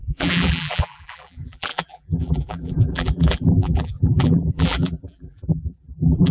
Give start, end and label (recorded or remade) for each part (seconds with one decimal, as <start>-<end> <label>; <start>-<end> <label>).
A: 0.0-6.3 remade